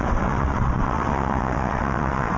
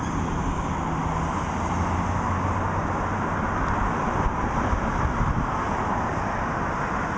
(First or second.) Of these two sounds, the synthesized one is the first